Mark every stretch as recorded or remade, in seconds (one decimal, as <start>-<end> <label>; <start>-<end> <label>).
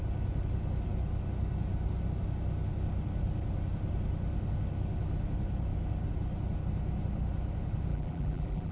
0.0-7.9 recorded; 7.9-8.7 remade